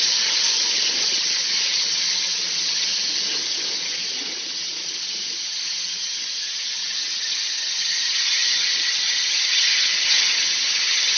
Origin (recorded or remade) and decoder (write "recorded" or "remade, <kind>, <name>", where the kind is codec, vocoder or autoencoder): remade, vocoder, HiFi-GAN